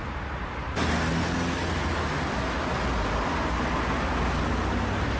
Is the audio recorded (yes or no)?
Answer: yes